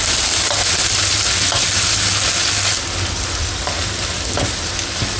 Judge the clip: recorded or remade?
recorded